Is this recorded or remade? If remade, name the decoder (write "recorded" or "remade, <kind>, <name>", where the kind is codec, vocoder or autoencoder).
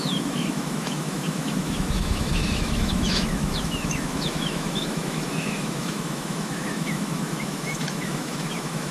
remade, autoencoder, DAC-VAE